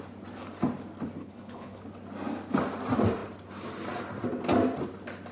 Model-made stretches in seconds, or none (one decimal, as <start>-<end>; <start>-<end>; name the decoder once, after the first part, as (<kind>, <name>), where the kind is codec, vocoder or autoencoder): 1.2-1.8 (codec, HILCodec)